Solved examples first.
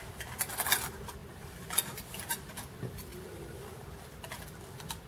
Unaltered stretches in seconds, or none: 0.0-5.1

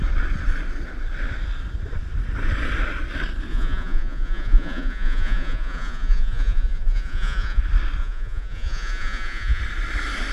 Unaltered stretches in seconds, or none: 0.0-3.5; 7.6-8.0; 9.6-10.3

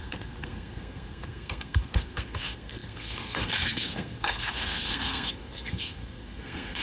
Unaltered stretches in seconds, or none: none

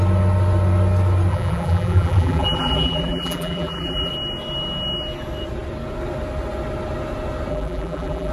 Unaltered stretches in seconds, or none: 0.0-1.3; 4.1-7.5

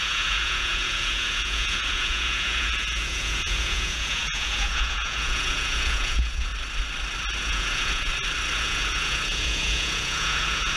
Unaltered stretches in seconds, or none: 6.5-7.4; 8.1-8.6

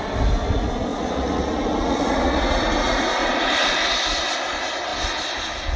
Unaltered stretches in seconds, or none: 0.0-0.9; 3.5-5.8

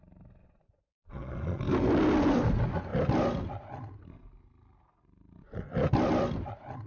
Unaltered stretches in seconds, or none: 0.0-0.4; 1.6-6.9

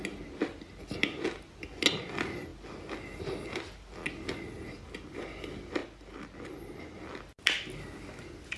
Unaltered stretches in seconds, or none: 0.0-8.6